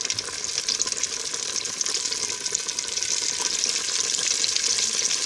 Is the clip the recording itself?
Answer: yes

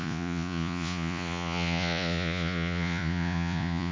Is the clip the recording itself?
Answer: no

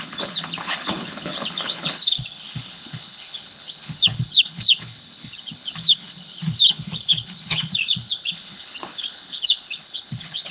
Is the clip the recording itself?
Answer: no